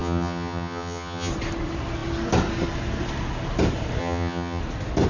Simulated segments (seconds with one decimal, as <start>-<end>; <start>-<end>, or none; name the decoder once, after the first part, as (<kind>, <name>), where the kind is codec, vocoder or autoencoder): 0.0-1.3 (vocoder, HiFi-GAN); 4.0-4.6

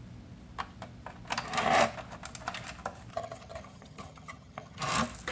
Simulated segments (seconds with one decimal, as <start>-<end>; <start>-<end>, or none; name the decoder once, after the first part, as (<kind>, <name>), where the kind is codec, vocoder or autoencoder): 3.1-4.8 (vocoder, HiFi-GAN)